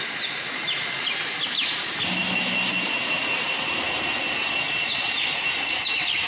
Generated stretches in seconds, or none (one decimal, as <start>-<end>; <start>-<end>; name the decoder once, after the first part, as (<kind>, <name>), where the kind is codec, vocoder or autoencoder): none